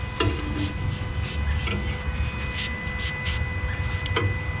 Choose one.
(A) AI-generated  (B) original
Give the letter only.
B